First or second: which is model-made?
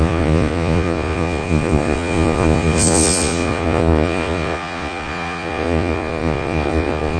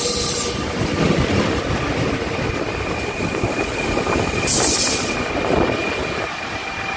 first